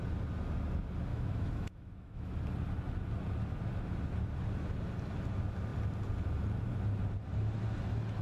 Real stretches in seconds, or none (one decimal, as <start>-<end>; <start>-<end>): 0.0-1.1; 2.3-8.2